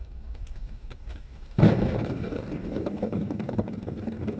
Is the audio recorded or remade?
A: remade